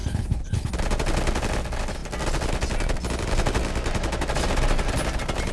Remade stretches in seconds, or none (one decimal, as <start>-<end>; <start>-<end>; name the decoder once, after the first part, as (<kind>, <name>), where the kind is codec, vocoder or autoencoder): 0.0-0.7 (codec, HILCodec)